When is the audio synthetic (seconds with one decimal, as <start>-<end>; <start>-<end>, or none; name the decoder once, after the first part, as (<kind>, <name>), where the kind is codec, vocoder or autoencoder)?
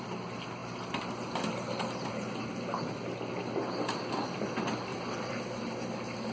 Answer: none